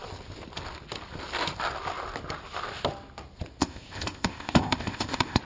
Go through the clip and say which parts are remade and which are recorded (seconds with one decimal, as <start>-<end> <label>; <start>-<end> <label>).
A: 0.0-3.6 recorded; 3.6-5.4 remade